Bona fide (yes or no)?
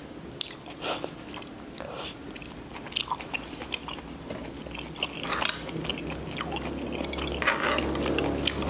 yes